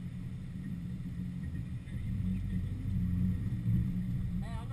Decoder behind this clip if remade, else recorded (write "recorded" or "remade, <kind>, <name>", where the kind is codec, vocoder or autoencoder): remade, vocoder, BigVGAN v2